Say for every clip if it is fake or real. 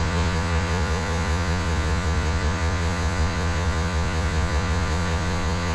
fake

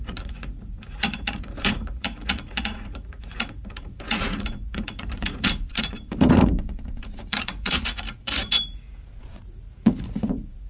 fake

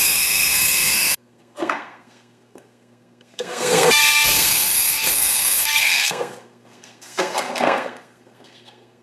fake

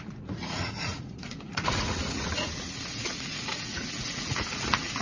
fake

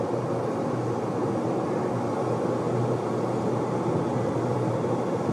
real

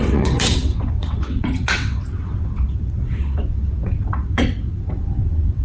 fake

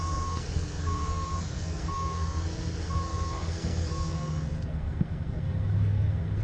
fake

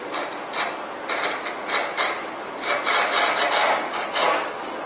real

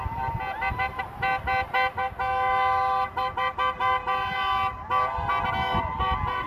real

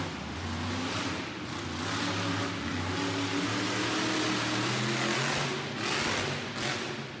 real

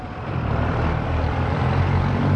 fake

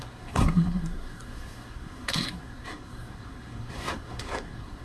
fake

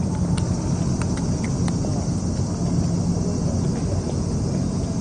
real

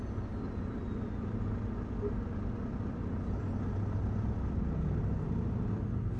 real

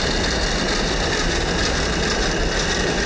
real